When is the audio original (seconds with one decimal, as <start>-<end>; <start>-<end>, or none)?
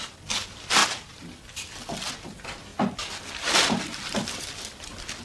2.7-3.3